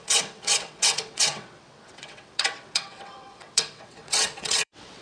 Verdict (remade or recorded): remade